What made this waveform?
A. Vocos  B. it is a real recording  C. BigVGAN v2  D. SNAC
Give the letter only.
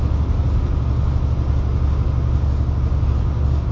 B